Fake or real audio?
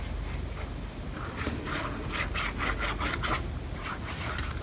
real